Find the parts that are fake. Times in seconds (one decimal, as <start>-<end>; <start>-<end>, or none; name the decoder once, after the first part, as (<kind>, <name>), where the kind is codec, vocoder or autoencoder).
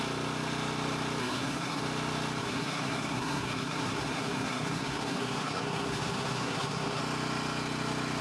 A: 1.2-1.8 (codec, SNAC); 2.4-7.0